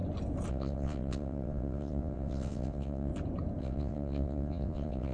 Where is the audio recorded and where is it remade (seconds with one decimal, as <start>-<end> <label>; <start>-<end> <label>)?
0.0-0.5 recorded; 0.5-3.1 remade; 3.1-3.6 recorded; 3.6-5.1 remade